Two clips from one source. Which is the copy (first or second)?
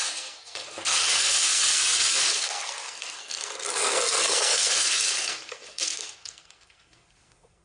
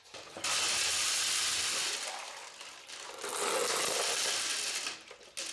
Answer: first